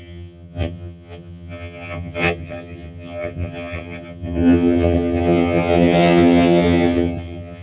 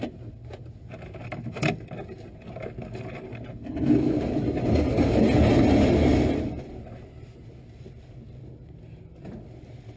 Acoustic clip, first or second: second